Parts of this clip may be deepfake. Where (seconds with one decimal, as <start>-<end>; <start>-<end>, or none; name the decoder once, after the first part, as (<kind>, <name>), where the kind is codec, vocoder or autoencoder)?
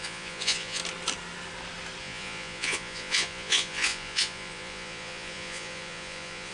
0.0-0.8 (vocoder, Vocos); 2.0-6.5